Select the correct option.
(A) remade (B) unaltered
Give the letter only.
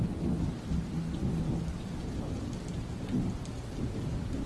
B